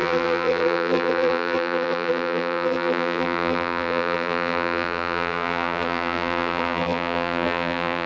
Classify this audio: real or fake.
fake